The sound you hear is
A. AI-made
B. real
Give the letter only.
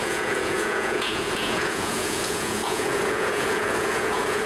A